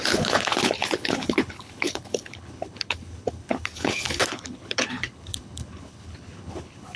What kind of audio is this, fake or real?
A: fake